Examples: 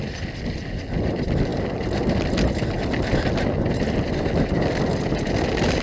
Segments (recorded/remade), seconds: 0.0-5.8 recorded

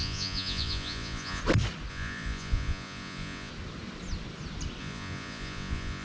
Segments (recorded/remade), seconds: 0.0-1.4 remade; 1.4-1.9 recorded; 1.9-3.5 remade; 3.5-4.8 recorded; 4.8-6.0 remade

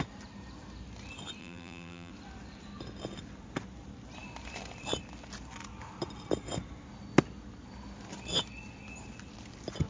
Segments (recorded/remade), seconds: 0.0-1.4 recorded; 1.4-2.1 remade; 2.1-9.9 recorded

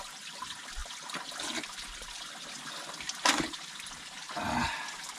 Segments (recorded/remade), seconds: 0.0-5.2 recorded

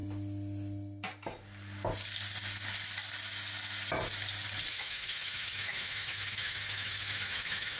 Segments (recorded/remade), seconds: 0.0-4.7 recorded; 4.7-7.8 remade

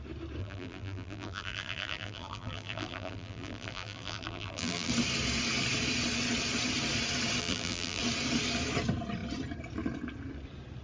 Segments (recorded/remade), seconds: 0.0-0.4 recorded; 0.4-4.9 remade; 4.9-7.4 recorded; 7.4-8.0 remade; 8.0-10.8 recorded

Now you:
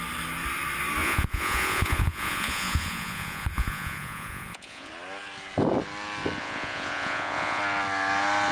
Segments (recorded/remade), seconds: 0.0-1.0 recorded; 1.0-4.9 remade; 4.9-6.4 recorded; 6.4-7.6 remade; 7.6-8.5 recorded

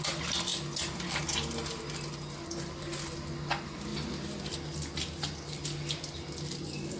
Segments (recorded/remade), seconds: 0.0-7.0 recorded